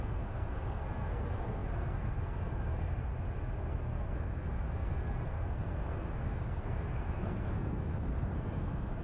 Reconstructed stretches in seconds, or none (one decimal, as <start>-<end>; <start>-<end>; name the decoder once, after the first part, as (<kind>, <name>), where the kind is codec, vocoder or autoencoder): 0.0-3.1 (codec, SNAC); 3.7-9.0